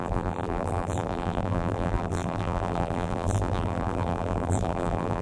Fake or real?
fake